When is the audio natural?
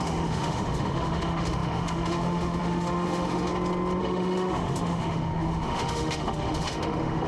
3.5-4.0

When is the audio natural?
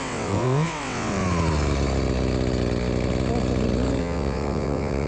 1.2-4.0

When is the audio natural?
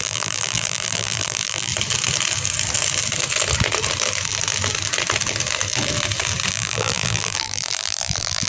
1.7-6.5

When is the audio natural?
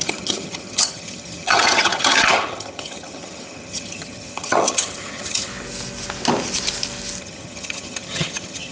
5.5-7.2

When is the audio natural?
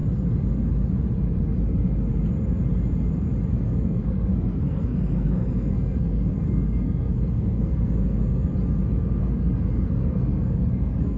0.0-3.5; 8.5-9.2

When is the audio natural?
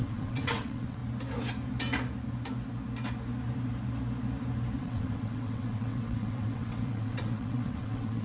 1.0-4.8